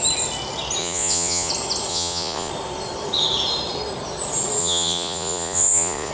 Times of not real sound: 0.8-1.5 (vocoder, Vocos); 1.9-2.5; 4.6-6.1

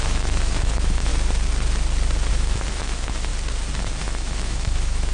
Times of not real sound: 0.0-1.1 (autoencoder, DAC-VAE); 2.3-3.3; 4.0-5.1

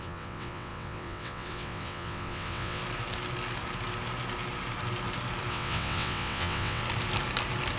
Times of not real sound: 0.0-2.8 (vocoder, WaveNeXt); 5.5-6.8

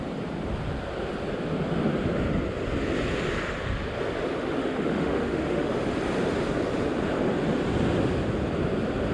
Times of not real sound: 4.6-5.7 (autoencoder, DAC-VAE)